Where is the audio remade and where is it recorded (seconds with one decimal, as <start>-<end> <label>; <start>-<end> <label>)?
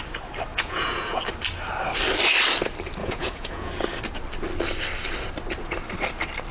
0.0-0.5 recorded; 0.5-1.2 remade; 1.2-3.0 recorded; 3.0-3.7 remade; 3.7-6.5 recorded